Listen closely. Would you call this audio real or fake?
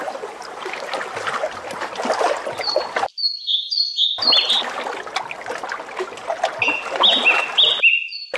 real